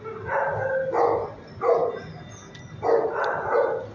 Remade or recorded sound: recorded